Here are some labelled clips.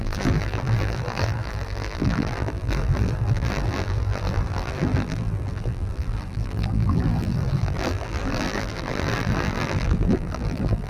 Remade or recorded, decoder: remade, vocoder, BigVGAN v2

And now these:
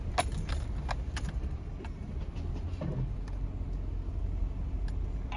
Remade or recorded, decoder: recorded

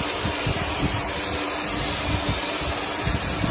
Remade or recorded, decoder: recorded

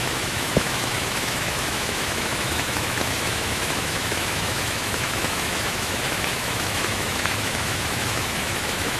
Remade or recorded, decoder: remade, autoencoder, DAC-VAE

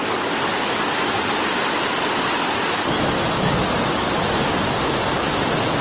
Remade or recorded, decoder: recorded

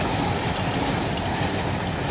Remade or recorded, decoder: recorded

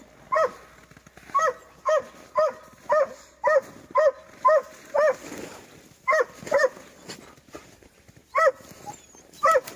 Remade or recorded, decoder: recorded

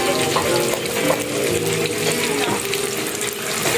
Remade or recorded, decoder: recorded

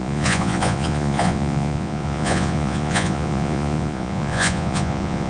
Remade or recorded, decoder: remade, vocoder, Vocos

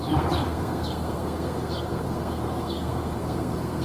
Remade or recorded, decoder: remade, codec, SNAC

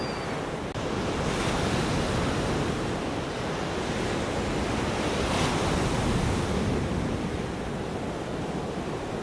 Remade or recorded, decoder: recorded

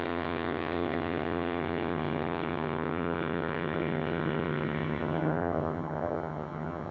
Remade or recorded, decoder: remade, vocoder, HiFi-GAN